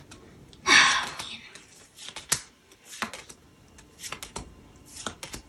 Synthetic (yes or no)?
no